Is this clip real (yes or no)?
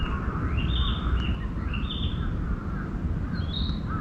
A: yes